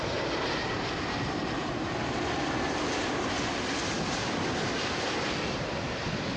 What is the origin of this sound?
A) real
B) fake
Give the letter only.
A